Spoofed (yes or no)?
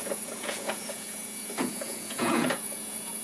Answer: yes